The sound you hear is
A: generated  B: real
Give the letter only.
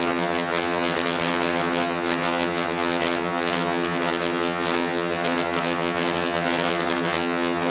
A